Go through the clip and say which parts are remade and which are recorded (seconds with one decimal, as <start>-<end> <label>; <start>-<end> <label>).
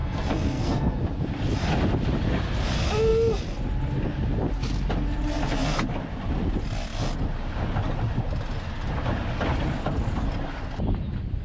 0.0-1.0 remade; 1.0-11.4 recorded